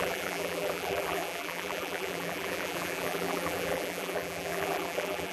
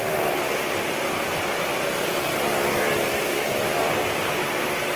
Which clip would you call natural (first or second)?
second